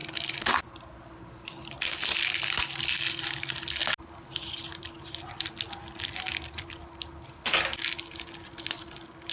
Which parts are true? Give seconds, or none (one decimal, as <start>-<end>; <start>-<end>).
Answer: 0.0-9.3